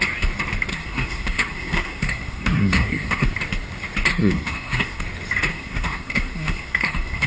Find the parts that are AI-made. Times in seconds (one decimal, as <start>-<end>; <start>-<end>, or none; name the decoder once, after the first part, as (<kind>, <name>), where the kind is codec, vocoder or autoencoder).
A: 0.7-3.3 (codec, SNAC); 4.1-5.0; 5.5-7.3